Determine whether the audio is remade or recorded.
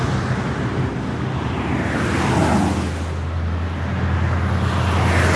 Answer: recorded